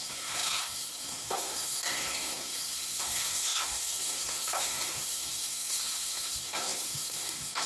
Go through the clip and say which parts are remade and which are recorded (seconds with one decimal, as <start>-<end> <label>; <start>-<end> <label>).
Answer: 0.0-7.7 remade